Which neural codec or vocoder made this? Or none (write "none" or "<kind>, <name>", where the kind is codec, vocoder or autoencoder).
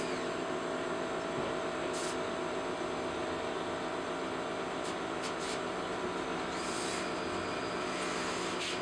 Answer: none